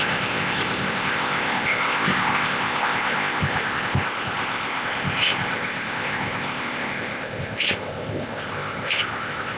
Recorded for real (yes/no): no